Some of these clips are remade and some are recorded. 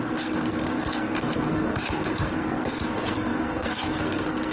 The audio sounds remade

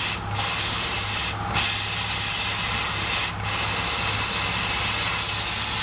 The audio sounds recorded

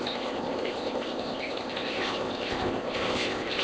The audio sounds remade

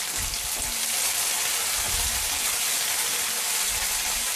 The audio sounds recorded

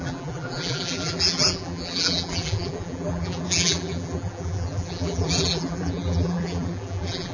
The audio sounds remade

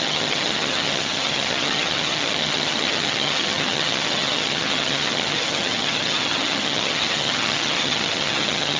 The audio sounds remade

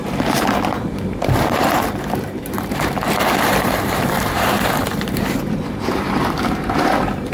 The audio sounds remade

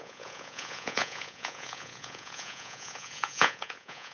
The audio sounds remade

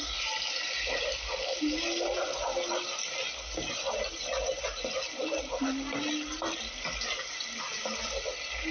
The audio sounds recorded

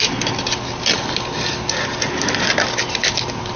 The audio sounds recorded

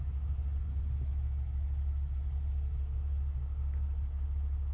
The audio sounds recorded